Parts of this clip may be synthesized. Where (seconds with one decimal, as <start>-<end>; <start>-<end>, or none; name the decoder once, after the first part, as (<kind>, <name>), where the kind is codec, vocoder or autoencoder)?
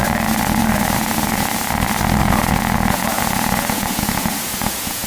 2.2-5.1 (vocoder, Vocos)